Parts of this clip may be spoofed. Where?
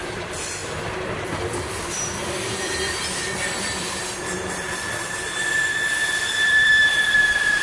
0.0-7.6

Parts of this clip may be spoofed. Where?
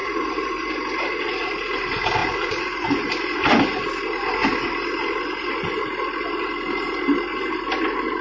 0.0-0.7; 2.2-3.1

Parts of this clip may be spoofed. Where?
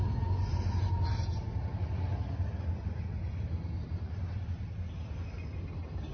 none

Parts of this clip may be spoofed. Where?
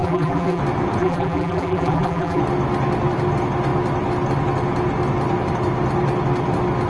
0.0-0.6; 1.0-2.4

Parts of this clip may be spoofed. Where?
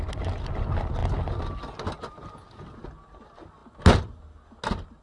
1.0-1.7